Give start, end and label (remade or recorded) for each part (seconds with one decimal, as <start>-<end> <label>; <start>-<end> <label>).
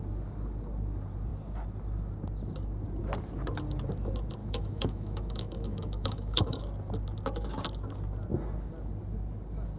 0.0-4.4 recorded; 4.4-6.6 remade; 6.6-9.8 recorded